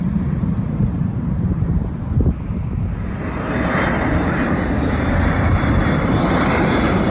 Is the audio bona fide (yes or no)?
no